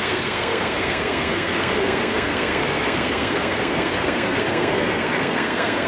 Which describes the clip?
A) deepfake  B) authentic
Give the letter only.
A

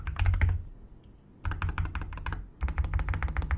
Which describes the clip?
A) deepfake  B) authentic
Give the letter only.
B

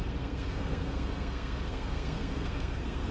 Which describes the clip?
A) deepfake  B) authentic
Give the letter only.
A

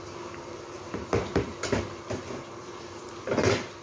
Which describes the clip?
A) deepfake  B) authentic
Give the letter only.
B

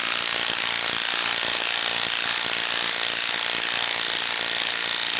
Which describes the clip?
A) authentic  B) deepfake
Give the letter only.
A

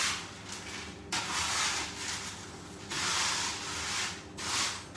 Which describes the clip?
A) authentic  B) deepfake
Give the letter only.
A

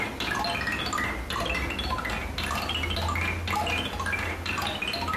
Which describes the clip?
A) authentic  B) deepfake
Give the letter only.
A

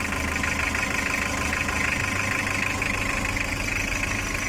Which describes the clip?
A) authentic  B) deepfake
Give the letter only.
A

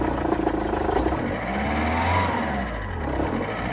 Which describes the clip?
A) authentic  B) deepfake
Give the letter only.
A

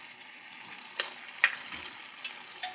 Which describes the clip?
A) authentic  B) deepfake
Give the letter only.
A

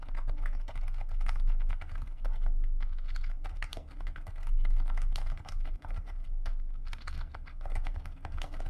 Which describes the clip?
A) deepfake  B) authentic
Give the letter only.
A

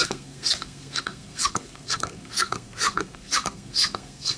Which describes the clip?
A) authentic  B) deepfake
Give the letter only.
B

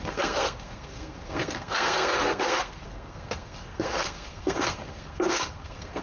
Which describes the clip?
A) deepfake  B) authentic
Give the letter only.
A